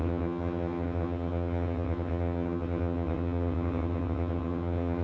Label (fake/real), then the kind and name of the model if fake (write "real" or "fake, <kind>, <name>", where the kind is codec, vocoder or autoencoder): fake, vocoder, HiFi-GAN